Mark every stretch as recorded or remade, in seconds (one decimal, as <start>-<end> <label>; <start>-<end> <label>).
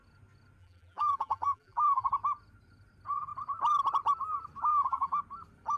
0.0-0.6 recorded; 0.6-2.1 remade; 2.1-4.7 recorded; 4.7-5.2 remade; 5.2-5.8 recorded